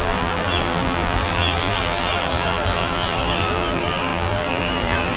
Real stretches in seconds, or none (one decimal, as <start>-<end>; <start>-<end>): none